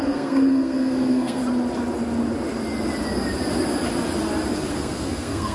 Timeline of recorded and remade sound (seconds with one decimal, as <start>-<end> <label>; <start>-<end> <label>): 0.0-1.4 remade; 1.4-4.7 recorded; 4.7-5.5 remade